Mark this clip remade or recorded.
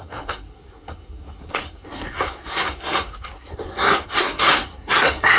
remade